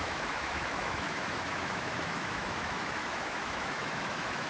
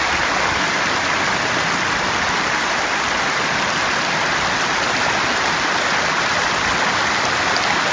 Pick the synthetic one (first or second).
first